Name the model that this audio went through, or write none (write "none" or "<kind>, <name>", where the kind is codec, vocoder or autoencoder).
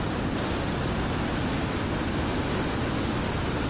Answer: none